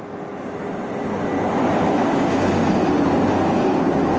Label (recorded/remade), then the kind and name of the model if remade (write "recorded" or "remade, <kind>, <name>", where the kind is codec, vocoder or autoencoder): recorded